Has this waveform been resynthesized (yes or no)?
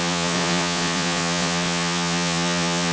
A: yes